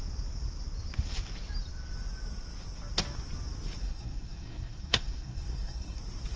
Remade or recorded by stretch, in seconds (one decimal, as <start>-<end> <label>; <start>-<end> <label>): 0.0-3.8 recorded; 3.8-6.0 remade; 6.0-6.4 recorded